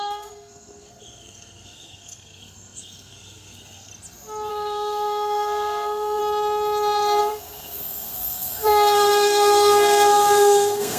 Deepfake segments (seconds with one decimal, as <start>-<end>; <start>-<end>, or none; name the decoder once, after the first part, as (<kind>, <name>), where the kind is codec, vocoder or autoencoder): 0.0-3.9 (codec, SNAC); 4.5-6.2; 7.2-11.0